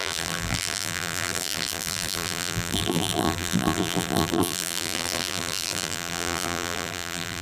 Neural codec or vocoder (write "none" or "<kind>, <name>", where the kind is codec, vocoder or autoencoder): vocoder, BigVGAN v2